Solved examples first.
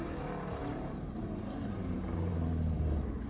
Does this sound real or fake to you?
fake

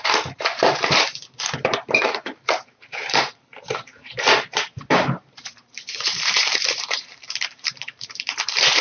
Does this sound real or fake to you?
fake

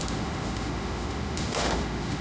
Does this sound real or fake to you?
fake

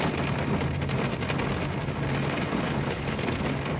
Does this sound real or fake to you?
real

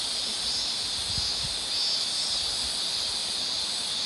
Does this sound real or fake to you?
real